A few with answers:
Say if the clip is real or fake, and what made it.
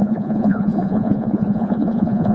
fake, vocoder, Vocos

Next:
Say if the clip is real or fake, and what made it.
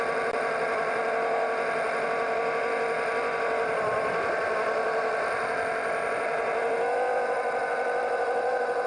real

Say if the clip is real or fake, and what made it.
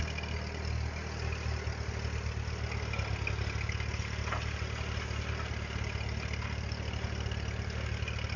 real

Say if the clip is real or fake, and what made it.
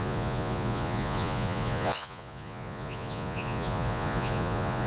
fake, vocoder, Vocos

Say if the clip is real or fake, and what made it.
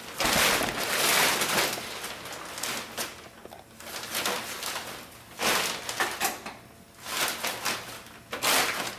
real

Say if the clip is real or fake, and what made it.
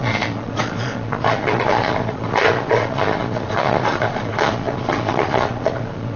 fake, vocoder, Vocos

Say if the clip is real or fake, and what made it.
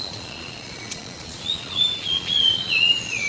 fake, vocoder, Vocos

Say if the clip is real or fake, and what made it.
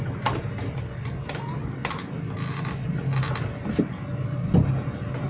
real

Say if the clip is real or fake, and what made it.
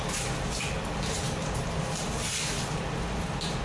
real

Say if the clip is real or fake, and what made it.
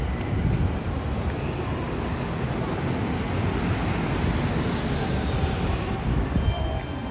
real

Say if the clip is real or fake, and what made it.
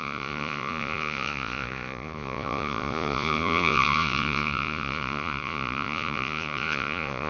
fake, vocoder, Vocos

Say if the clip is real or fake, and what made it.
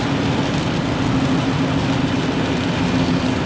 real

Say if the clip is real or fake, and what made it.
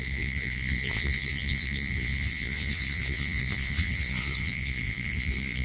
fake, vocoder, Vocos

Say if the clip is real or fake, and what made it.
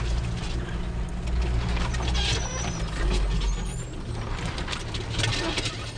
real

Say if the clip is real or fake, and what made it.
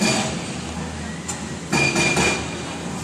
real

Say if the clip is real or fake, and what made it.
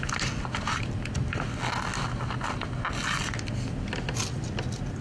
real